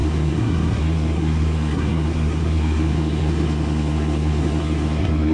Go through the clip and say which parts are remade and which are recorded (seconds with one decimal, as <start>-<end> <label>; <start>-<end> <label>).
0.0-5.3 remade